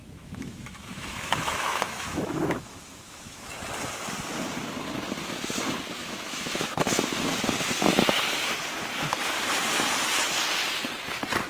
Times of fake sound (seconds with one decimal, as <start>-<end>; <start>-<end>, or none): 0.0-3.5; 6.0-7.0